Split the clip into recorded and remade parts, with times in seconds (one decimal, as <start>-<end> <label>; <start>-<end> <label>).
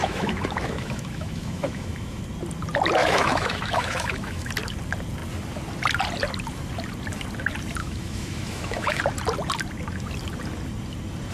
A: 0.0-2.2 remade; 2.2-3.0 recorded; 3.0-4.5 remade; 4.5-7.8 recorded; 7.8-9.0 remade; 9.0-11.3 recorded